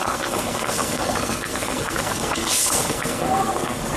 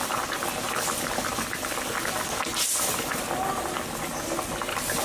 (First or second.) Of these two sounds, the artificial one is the first